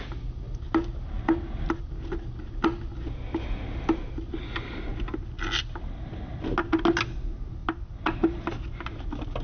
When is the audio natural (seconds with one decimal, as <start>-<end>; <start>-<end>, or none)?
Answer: 0.0-9.4